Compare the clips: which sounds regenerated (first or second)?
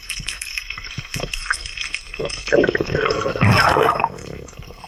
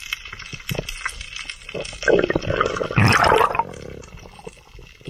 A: first